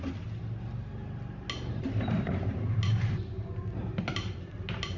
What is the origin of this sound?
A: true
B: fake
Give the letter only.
A